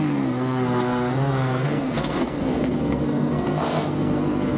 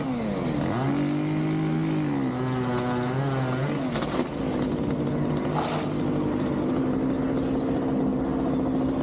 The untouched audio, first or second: second